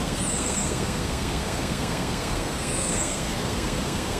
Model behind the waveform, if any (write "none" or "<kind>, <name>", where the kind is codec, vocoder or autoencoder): codec, SNAC